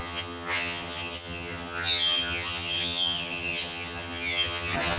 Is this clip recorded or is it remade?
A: remade